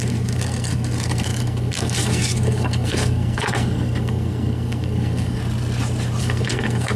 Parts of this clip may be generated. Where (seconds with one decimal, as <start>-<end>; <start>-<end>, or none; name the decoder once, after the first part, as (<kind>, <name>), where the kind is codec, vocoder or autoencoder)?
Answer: 0.0-5.4 (codec, SNAC); 6.2-7.0